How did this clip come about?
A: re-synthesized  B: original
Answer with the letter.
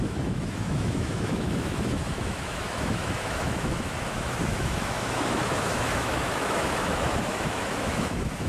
A